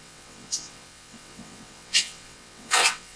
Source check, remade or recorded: remade